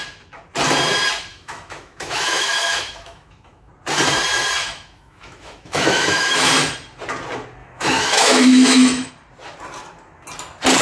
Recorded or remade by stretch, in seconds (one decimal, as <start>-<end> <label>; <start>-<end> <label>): 0.0-1.3 recorded; 1.3-3.7 remade; 3.7-4.6 recorded; 4.6-6.5 remade; 6.5-7.6 recorded; 7.6-9.1 remade; 9.1-10.8 recorded